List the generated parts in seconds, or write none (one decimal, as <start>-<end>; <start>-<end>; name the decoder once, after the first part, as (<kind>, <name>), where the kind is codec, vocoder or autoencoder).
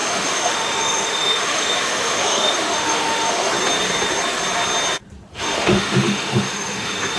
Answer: 0.0-3.5 (autoencoder, DAC-VAE); 5.3-7.2